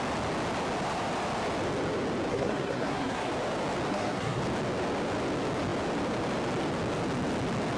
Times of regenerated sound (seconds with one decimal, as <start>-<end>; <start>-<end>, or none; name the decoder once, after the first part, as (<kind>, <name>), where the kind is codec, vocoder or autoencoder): 2.3-3.3 (codec, SNAC); 3.9-4.4